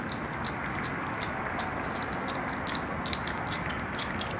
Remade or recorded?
recorded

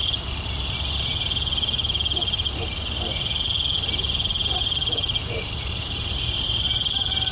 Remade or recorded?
recorded